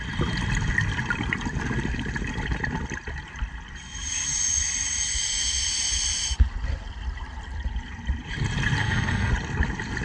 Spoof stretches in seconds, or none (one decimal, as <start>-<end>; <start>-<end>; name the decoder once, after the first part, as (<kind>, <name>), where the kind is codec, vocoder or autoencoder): 8.8-9.3 (codec, SNAC)